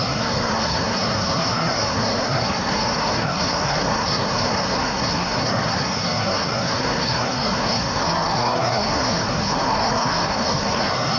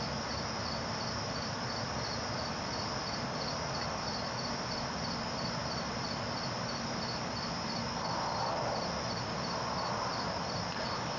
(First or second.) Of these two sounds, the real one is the second